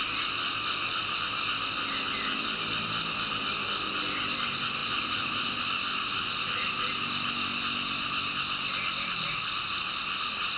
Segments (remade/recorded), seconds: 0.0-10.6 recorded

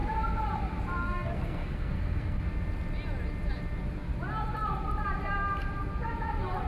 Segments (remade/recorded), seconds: 0.0-1.0 recorded; 1.0-2.4 remade; 2.4-6.7 recorded

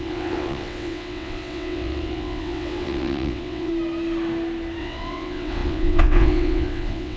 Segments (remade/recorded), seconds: 0.0-3.7 remade; 3.7-4.8 recorded; 4.8-7.2 remade

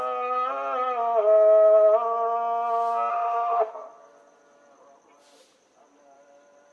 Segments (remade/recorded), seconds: 0.0-3.1 recorded; 3.1-3.7 remade; 3.7-6.7 recorded